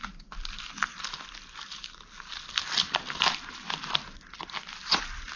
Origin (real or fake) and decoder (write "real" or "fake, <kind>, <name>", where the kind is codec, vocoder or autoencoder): real